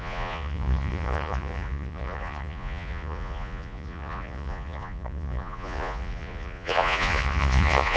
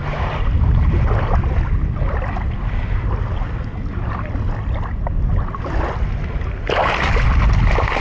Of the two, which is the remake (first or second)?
first